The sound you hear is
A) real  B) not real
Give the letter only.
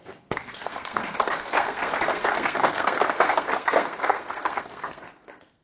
B